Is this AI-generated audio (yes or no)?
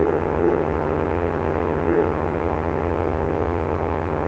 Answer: yes